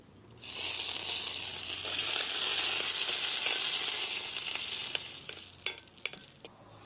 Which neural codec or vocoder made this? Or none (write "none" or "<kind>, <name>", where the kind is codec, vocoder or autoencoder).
none